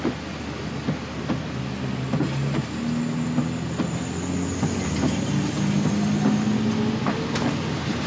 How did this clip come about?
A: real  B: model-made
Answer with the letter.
A